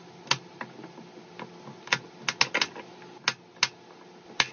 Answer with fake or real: real